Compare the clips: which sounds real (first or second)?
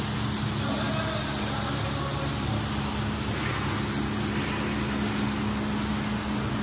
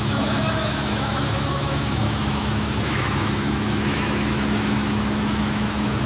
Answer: first